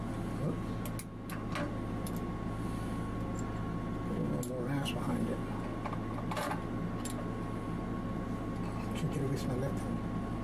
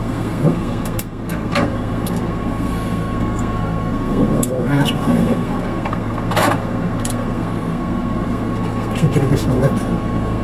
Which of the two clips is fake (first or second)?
second